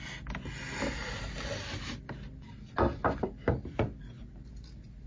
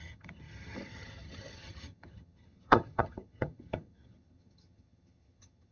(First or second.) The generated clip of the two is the second